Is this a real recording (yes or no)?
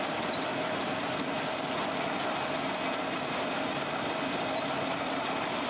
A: yes